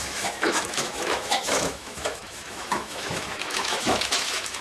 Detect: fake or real fake